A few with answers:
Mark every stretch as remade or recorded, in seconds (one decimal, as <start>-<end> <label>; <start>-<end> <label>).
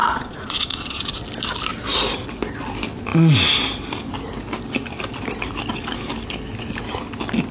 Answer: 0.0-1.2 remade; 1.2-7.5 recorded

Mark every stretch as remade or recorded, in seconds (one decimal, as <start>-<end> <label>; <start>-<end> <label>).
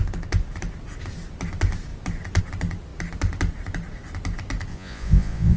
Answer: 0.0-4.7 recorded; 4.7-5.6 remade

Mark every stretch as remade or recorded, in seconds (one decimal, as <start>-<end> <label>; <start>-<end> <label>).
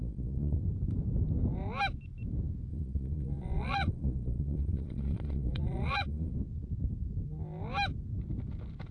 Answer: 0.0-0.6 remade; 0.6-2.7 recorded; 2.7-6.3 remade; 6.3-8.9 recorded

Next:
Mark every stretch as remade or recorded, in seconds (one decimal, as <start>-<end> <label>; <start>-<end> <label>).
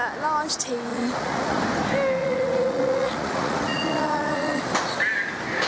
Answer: 0.0-0.9 recorded; 0.9-1.6 remade; 1.6-2.2 recorded; 2.2-4.6 remade; 4.6-5.7 recorded